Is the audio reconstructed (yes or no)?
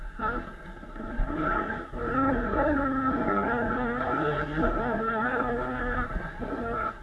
yes